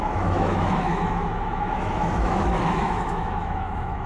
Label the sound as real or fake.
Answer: fake